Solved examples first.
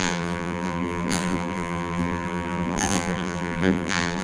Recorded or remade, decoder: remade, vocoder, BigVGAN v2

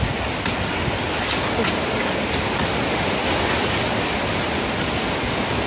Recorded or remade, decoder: recorded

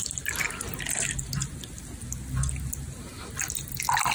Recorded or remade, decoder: recorded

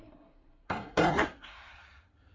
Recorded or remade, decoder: remade, codec, SNAC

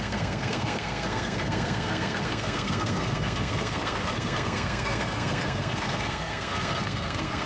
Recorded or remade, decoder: remade, codec, SNAC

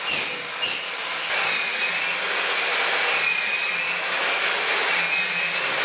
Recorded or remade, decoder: recorded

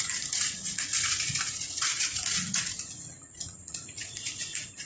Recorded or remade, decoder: remade, vocoder, Vocos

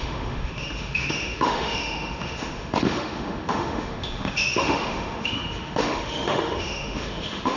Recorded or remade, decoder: remade, autoencoder, DAC-VAE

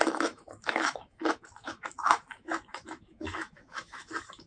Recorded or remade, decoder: remade, autoencoder, DAC-VAE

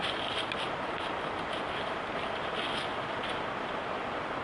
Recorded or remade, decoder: recorded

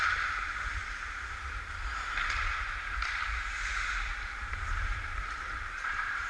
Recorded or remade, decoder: remade, vocoder, BigVGAN v2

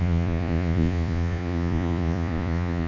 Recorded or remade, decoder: remade, vocoder, Vocos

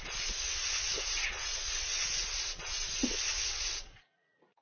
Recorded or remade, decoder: remade, vocoder, Vocos